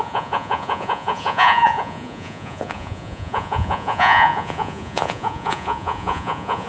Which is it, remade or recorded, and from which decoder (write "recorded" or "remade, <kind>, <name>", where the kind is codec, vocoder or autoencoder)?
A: remade, vocoder, Vocos